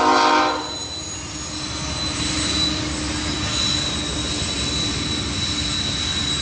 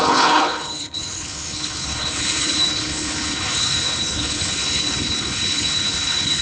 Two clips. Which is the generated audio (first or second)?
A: second